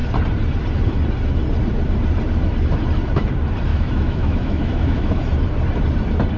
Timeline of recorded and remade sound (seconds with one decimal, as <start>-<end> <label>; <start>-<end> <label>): 0.0-3.7 recorded; 3.7-5.2 remade; 5.2-6.4 recorded